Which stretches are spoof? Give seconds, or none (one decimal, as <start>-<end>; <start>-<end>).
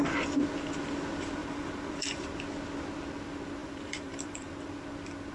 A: 1.4-2.2; 3.6-4.5